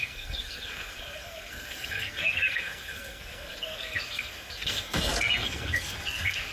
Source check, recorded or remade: remade